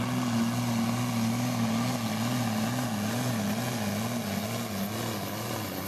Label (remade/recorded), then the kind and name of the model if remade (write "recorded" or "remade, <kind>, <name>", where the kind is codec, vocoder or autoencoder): recorded